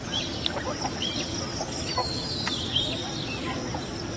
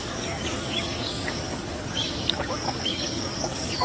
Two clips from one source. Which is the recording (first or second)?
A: first